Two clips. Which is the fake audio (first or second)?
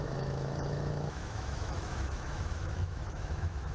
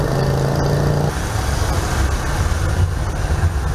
first